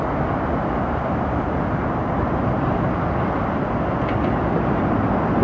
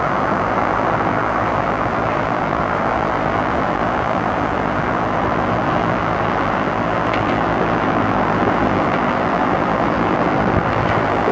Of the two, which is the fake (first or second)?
second